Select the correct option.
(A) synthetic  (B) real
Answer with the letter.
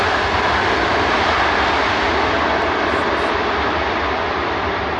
B